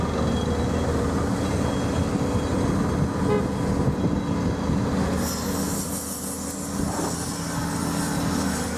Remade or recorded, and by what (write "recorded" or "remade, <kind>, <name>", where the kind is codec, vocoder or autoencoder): recorded